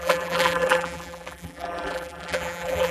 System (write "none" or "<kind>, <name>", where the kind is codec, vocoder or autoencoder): vocoder, BigVGAN v2